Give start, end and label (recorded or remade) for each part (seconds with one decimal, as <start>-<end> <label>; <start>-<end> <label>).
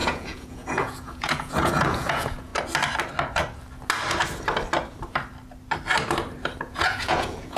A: 0.0-2.5 remade; 2.5-6.6 recorded; 6.6-7.6 remade